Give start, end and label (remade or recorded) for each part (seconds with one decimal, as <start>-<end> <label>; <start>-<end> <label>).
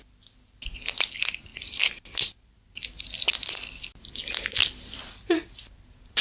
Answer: 0.0-1.5 recorded; 1.5-4.1 remade; 4.1-4.6 recorded; 4.6-6.2 remade